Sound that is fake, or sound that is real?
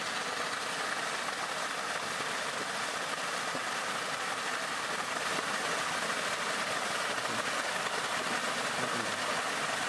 real